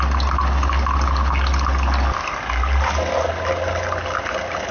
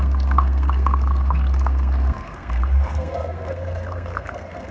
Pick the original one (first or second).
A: first